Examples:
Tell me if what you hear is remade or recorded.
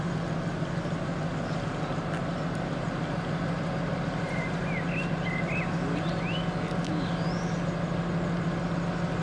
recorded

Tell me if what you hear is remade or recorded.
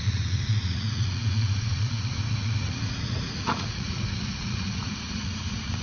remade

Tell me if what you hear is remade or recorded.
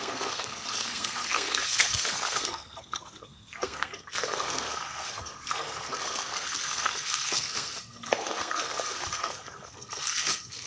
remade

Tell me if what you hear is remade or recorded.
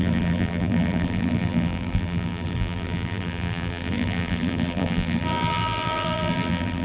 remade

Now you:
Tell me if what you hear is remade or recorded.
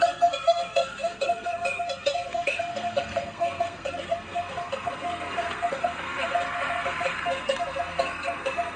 remade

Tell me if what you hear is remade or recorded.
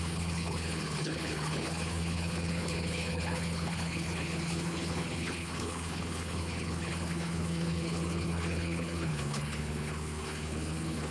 remade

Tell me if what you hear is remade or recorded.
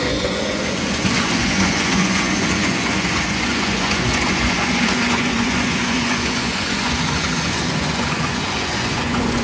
remade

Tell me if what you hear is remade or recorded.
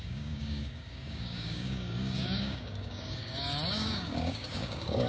remade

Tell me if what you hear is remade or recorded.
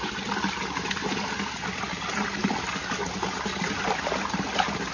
recorded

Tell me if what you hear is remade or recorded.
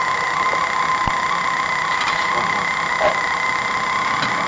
recorded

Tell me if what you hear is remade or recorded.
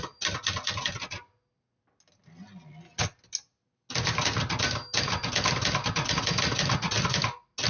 recorded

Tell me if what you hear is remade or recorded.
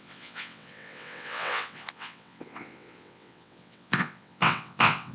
remade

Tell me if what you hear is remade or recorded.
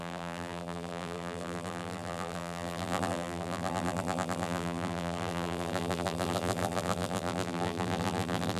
remade